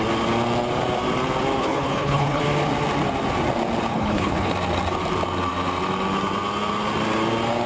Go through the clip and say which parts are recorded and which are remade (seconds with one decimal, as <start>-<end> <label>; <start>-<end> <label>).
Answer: 0.0-1.6 recorded; 1.6-2.4 remade; 2.4-3.9 recorded; 3.9-4.5 remade; 4.5-7.7 recorded